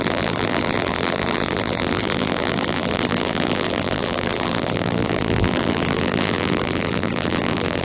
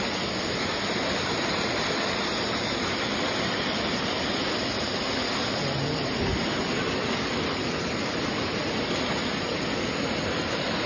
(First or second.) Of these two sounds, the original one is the second